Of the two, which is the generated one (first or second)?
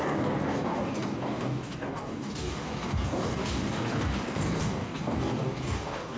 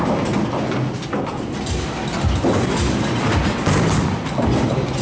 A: first